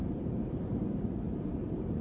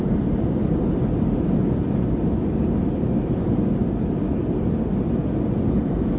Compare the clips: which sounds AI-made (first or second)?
first